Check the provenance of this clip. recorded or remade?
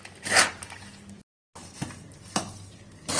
recorded